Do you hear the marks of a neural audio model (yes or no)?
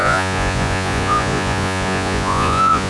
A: yes